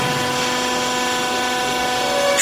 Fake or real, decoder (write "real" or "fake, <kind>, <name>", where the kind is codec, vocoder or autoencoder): real